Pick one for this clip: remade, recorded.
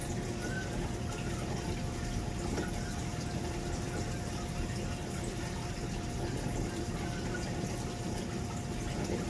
recorded